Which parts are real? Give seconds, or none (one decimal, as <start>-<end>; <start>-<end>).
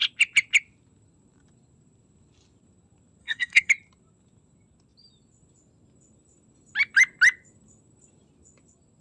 0.0-3.2; 3.7-9.0